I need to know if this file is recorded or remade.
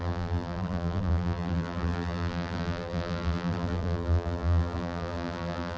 remade